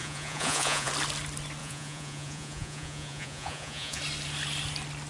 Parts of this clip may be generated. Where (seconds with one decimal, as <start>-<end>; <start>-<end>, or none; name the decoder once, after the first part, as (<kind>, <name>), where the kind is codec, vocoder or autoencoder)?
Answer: 0.0-0.9 (vocoder, Vocos); 1.6-4.0